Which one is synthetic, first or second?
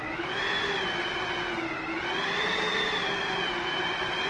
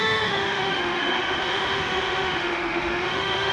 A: second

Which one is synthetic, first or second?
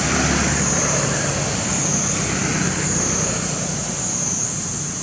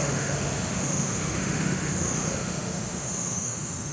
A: second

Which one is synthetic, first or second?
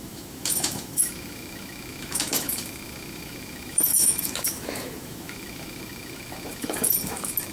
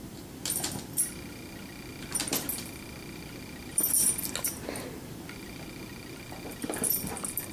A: first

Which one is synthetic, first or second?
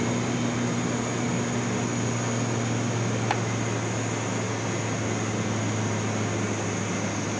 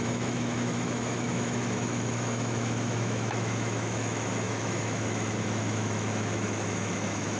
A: second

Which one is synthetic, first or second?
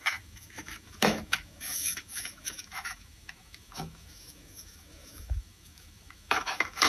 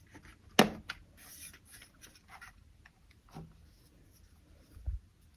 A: first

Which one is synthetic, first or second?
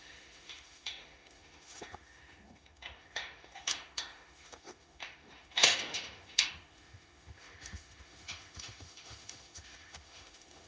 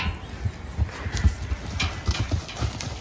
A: first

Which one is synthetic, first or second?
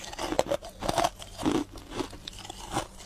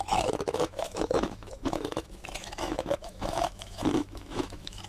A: second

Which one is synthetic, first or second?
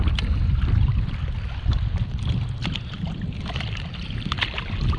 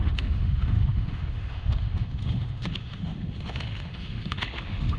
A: second